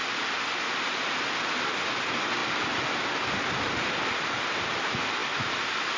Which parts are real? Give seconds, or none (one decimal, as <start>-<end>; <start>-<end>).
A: 0.0-6.0

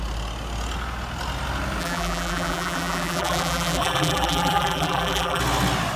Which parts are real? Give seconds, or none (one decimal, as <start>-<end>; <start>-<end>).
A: 0.0-1.8; 5.4-6.0

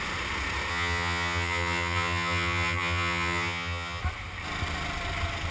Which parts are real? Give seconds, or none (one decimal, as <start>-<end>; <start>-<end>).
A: 0.0-0.7; 4.0-5.5